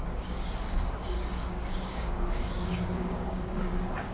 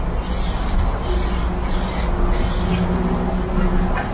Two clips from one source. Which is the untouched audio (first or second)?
second